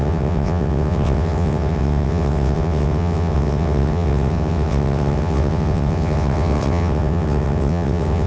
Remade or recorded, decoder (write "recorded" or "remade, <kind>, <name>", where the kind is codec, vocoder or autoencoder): remade, vocoder, WaveNeXt